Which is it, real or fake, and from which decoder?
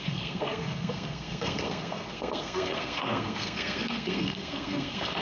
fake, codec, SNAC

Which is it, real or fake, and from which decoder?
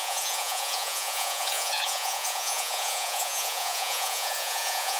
fake, vocoder, Vocos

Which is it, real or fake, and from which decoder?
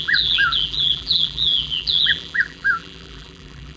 fake, vocoder, BigVGAN v2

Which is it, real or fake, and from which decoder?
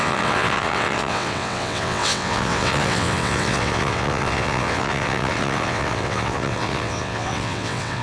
fake, vocoder, WaveNeXt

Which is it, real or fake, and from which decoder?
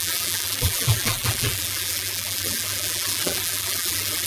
fake, vocoder, BigVGAN v2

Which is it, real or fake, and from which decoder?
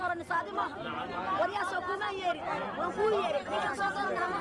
real